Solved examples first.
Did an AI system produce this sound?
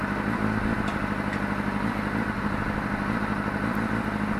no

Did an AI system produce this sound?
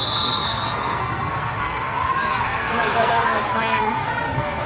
yes